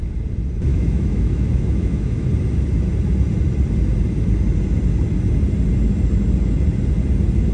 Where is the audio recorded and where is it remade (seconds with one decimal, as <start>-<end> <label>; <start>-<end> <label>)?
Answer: 0.0-0.7 recorded; 0.7-2.3 remade; 2.3-7.5 recorded